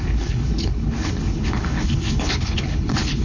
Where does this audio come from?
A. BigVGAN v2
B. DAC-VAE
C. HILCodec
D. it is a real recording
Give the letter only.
C